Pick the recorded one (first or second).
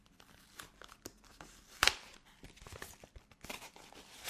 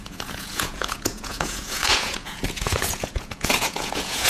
first